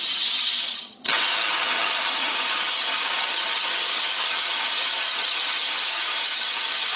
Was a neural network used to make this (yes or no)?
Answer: yes